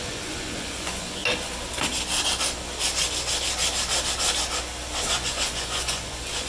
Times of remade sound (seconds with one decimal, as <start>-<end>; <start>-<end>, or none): 0.0-1.2; 5.1-6.5